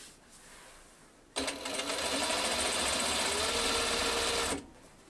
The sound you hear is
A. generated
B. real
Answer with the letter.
B